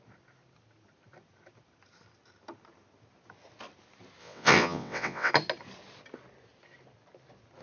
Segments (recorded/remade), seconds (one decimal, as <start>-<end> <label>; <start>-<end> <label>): 0.0-4.2 recorded; 4.2-5.3 remade; 5.3-7.6 recorded